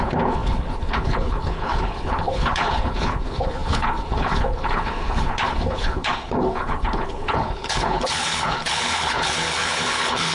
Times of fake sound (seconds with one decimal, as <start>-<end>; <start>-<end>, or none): 0.0-10.3